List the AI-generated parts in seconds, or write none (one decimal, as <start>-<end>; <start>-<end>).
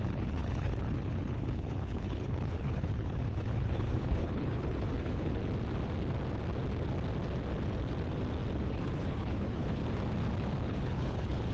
0.0-5.4; 8.6-9.8; 10.6-11.5